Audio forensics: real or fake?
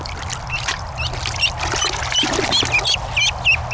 real